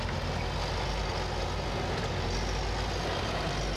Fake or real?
real